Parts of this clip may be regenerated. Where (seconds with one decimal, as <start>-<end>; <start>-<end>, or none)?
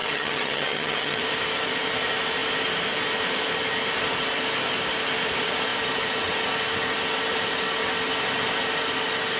0.0-1.2